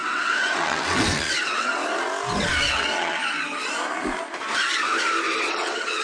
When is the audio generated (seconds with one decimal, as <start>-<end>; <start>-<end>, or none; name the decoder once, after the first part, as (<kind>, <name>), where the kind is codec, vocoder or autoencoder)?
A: 0.0-1.8 (vocoder, WaveNeXt); 2.7-3.2; 5.4-6.0